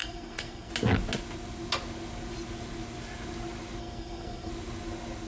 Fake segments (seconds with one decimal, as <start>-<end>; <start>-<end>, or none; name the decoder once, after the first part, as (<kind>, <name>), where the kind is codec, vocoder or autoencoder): 0.0-0.7 (codec, SNAC); 3.8-4.5